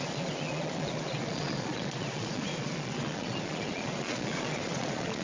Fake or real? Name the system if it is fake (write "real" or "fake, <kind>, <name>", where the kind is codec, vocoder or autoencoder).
fake, vocoder, Vocos